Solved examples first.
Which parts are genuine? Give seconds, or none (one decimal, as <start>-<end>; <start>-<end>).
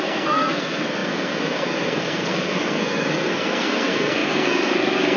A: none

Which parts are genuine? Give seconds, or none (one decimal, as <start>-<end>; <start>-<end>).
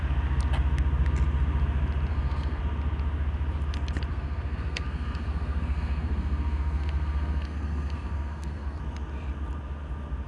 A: 0.0-2.1; 2.6-4.1; 8.8-10.3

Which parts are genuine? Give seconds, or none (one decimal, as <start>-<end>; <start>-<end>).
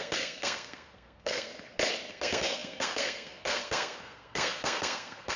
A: 1.5-2.1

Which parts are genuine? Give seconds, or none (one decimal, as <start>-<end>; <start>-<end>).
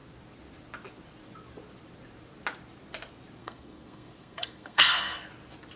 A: 0.0-3.4; 5.3-5.8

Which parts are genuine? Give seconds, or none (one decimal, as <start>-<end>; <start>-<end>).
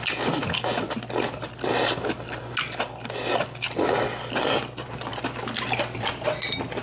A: 0.0-6.8